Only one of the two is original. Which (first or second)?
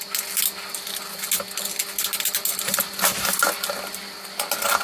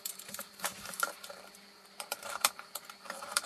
first